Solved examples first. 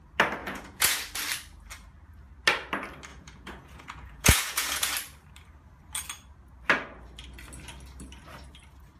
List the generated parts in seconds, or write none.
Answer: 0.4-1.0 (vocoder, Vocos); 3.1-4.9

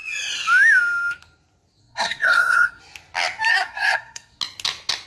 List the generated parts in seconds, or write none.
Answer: 1.8-2.8 (codec, SNAC); 3.5-4.4

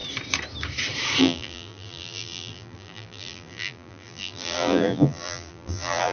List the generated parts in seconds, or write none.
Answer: 1.2-6.1 (vocoder, BigVGAN v2)

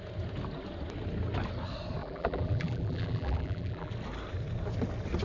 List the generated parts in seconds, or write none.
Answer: 2.0-3.9 (vocoder, BigVGAN v2)

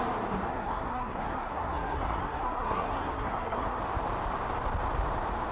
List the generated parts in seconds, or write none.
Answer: 0.5-3.8 (codec, SNAC)

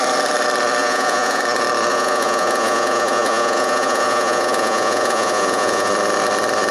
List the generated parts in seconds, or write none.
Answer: 0.8-1.4 (vocoder, Vocos); 1.9-5.9